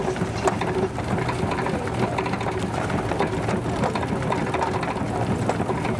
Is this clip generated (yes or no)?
no